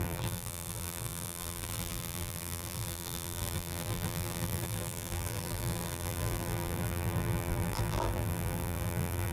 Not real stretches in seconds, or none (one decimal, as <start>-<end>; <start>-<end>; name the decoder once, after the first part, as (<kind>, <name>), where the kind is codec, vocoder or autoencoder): 0.0-9.3 (vocoder, BigVGAN v2)

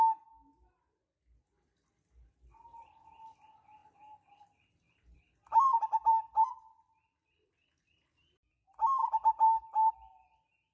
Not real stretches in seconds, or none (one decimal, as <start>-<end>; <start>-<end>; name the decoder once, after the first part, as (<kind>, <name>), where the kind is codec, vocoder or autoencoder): 3.8-7.8 (vocoder, BigVGAN v2); 9.0-9.9

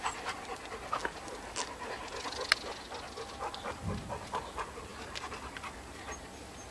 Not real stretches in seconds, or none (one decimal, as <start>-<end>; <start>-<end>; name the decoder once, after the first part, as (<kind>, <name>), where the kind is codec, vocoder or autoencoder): 4.9-5.5 (vocoder, BigVGAN v2)

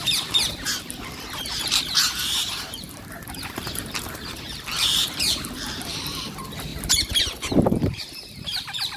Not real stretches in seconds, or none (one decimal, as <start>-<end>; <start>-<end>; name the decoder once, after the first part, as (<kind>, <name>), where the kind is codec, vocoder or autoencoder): 0.0-6.7 (vocoder, BigVGAN v2); 7.2-9.0

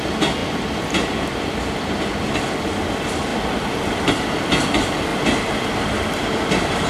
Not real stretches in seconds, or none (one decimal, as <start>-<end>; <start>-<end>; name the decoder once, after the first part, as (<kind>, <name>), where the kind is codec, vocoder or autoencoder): 0.4-2.1 (vocoder, BigVGAN v2); 3.3-4.1